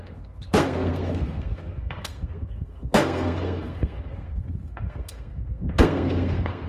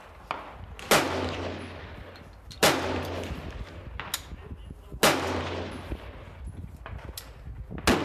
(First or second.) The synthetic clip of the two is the first